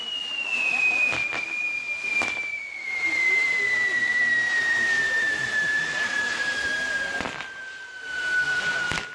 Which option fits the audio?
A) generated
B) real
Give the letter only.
B